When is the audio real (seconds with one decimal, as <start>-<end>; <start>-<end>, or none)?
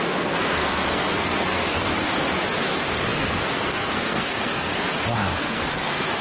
1.9-2.5; 4.7-5.3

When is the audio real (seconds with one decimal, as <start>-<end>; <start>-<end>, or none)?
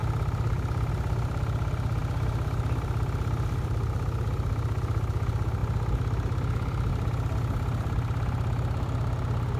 0.0-9.6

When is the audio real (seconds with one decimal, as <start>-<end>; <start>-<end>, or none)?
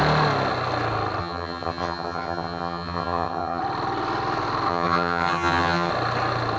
0.0-1.2; 3.6-4.7; 5.9-6.6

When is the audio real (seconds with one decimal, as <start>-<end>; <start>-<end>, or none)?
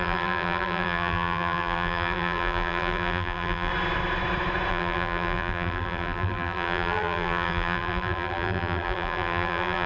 3.7-4.7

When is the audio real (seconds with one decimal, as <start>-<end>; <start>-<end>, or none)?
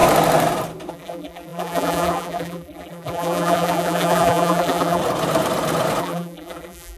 0.0-0.9; 5.0-6.0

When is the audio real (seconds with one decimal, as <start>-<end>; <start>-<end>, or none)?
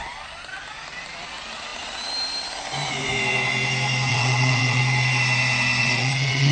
0.0-4.1; 4.8-5.8